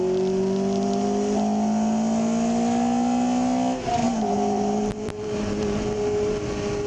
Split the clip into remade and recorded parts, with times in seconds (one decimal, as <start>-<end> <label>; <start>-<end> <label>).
0.0-4.0 recorded; 4.0-6.5 remade; 6.5-6.9 recorded